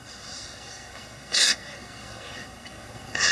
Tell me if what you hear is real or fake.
fake